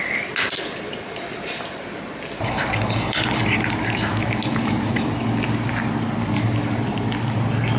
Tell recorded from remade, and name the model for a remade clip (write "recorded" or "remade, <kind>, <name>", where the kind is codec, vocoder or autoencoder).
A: recorded